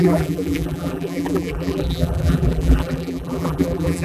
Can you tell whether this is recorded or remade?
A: remade